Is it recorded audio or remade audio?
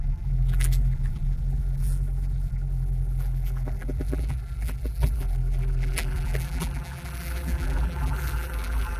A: remade